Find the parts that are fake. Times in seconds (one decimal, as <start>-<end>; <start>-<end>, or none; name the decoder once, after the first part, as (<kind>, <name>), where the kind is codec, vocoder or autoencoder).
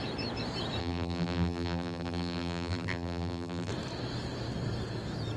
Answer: 0.8-3.7 (vocoder, BigVGAN v2)